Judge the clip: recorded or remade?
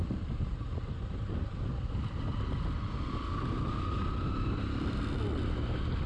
recorded